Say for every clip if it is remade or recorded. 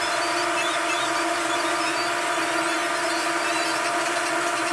recorded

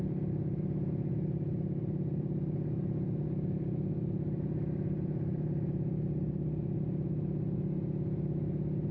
recorded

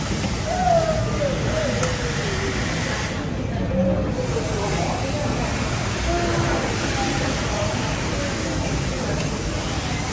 recorded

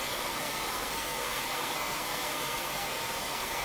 remade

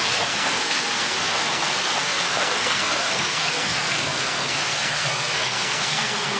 remade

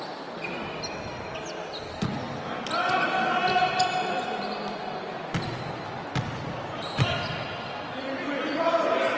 recorded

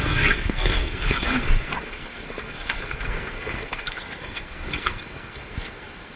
remade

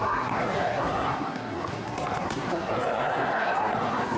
remade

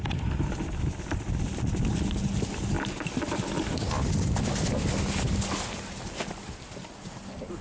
recorded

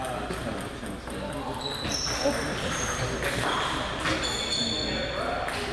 recorded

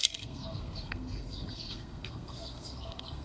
remade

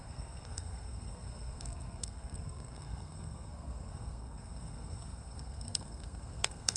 remade